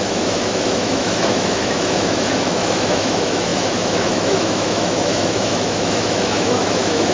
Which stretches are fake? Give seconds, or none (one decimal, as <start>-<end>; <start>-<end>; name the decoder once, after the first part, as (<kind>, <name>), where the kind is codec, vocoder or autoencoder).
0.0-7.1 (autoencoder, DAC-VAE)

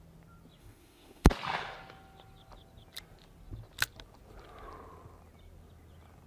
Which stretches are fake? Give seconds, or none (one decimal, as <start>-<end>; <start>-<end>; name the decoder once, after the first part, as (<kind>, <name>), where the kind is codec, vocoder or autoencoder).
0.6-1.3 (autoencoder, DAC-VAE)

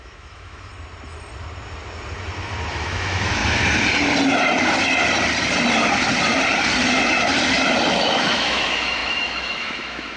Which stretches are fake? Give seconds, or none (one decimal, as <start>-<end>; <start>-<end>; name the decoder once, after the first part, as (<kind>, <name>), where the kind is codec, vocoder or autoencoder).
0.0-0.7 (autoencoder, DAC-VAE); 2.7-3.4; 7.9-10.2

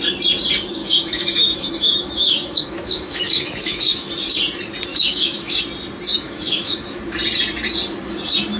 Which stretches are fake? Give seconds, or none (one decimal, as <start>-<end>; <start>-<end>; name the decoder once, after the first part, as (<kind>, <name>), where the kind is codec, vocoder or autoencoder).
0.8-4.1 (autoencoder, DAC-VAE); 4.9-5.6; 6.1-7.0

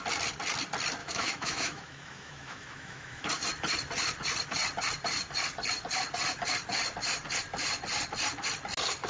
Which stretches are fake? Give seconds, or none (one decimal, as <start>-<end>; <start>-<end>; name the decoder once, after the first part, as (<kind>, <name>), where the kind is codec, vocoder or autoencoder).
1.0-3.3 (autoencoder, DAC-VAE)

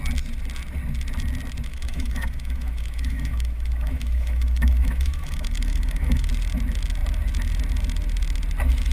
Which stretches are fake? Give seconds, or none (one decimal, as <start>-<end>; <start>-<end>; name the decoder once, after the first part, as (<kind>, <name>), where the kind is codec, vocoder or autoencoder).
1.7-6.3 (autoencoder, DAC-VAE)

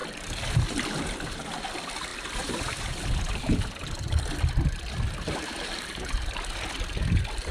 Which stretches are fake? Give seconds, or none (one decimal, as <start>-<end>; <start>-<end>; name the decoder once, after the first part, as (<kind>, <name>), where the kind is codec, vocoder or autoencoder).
none

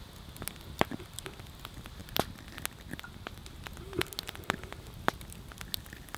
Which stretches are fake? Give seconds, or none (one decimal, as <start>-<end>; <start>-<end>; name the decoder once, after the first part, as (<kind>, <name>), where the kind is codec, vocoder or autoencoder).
none